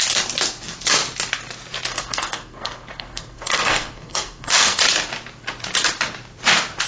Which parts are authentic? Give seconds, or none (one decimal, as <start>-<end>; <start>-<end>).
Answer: 0.0-1.9; 4.8-6.9